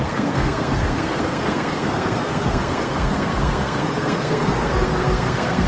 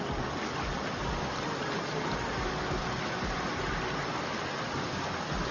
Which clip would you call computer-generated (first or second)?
first